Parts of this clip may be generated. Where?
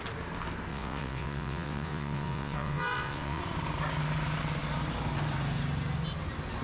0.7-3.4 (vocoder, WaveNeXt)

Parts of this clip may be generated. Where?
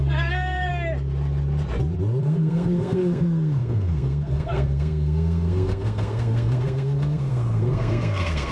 0.0-0.7 (codec, SNAC); 2.2-8.5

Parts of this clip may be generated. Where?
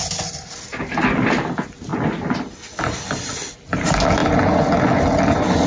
none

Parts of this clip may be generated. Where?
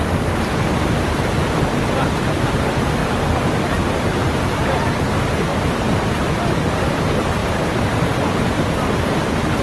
3.0-3.6 (vocoder, BigVGAN v2); 5.5-6.2; 7.4-8.0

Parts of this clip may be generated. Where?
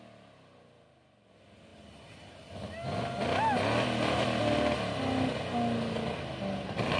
none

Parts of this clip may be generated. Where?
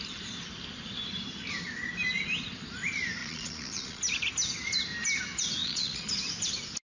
3.2-4.0 (vocoder, Vocos); 5.6-6.1